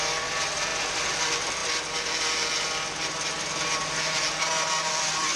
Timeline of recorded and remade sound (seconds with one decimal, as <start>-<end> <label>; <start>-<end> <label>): 0.0-1.6 remade; 1.6-4.8 recorded; 4.8-5.4 remade